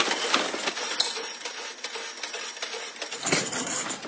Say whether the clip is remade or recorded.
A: recorded